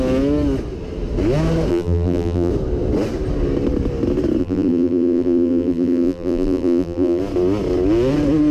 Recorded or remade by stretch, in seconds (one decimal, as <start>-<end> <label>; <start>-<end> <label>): 0.0-1.7 recorded; 1.7-2.5 remade; 2.5-4.4 recorded; 4.4-7.2 remade; 7.2-8.5 recorded